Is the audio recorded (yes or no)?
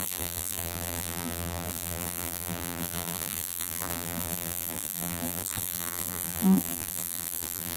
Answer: no